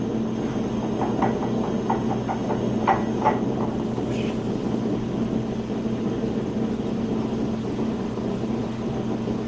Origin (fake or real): real